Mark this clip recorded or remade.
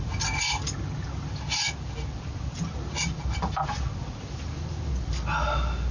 recorded